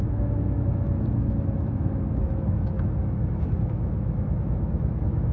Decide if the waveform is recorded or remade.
remade